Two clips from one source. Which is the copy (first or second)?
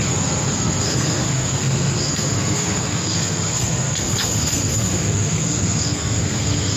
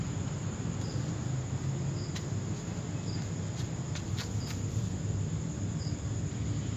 first